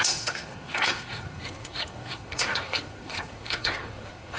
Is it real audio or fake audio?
fake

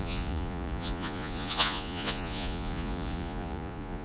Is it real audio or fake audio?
fake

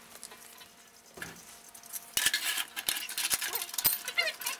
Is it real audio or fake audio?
real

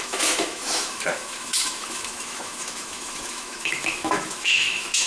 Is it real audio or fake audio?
fake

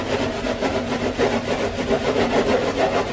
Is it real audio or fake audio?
real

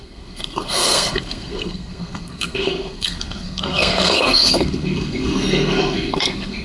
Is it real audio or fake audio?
fake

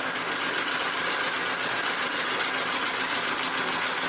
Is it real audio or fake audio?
real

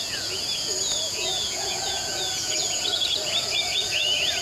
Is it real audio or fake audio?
fake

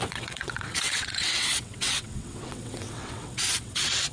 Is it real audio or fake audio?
fake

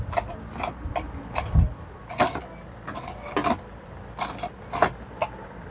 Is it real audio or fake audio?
real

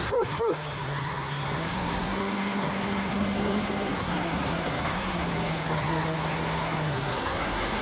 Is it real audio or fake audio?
fake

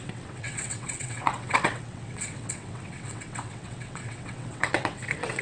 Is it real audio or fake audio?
fake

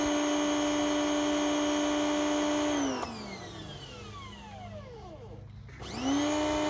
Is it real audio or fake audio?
real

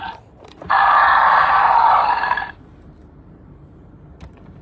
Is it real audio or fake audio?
fake